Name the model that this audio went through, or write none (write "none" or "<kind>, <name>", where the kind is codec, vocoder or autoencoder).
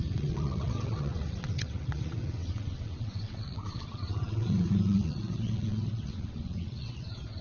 vocoder, WaveNeXt